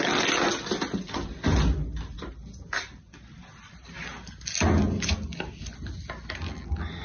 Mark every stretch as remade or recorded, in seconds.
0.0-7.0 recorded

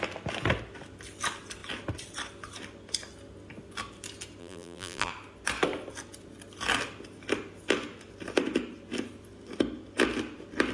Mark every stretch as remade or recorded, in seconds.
0.0-4.4 recorded; 4.4-5.1 remade; 5.1-10.7 recorded

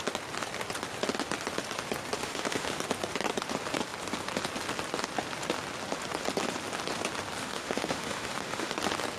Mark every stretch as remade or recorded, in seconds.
0.0-2.2 recorded; 2.2-2.8 remade; 2.8-7.4 recorded; 7.4-8.7 remade; 8.7-9.2 recorded